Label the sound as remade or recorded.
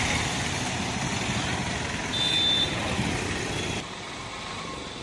recorded